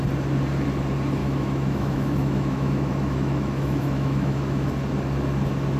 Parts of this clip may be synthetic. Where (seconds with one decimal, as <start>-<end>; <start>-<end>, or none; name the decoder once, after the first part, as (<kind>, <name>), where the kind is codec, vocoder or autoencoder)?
1.2-4.7 (autoencoder, DAC-VAE)